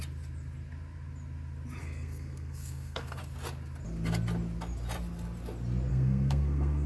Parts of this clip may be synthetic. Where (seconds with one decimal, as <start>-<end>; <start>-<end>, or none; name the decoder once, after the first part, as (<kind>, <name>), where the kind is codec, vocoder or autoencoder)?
1.8-3.2 (codec, SNAC); 5.9-6.9